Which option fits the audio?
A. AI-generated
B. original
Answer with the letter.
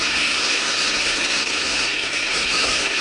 A